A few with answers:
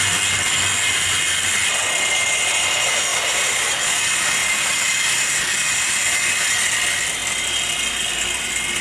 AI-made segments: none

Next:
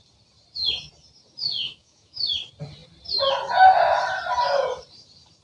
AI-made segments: 1.6-2.2 (autoencoder, DAC-VAE)

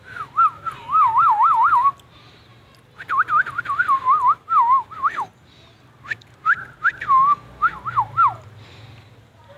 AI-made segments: 0.8-1.9 (codec, DAC)

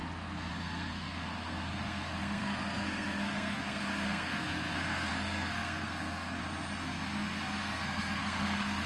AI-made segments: 0.5-6.4 (codec, SNAC); 7.6-8.9

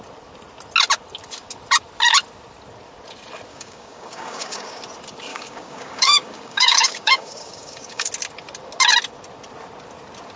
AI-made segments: 3.5-4.8 (codec, DAC); 5.3-8.1

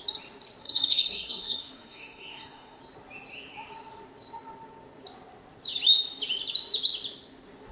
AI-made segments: 0.6-2.8 (codec, SNAC)

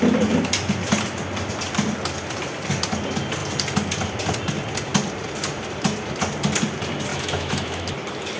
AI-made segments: 7.1-7.9 (autoencoder, DAC-VAE)